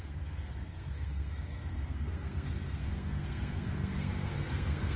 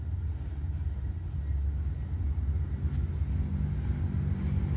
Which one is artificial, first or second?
first